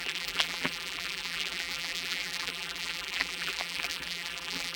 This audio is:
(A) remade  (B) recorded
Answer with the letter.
A